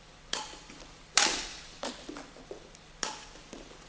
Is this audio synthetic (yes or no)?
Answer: yes